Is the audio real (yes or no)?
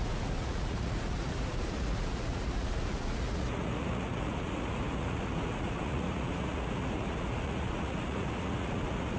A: no